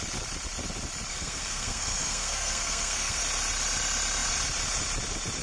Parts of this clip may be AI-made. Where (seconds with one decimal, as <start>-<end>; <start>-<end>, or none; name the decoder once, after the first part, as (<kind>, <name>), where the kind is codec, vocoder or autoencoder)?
1.1-3.2 (codec, SNAC)